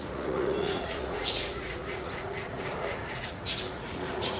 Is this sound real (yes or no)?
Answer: no